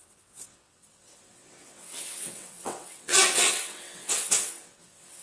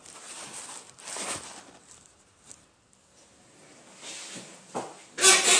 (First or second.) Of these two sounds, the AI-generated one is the first